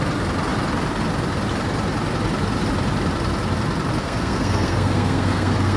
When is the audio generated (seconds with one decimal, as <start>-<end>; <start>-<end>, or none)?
4.0-5.8